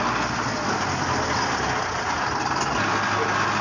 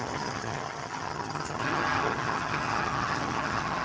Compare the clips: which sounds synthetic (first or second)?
second